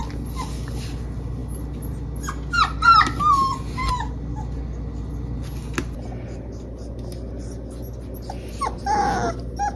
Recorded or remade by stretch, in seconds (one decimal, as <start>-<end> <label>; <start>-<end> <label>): 0.0-9.8 recorded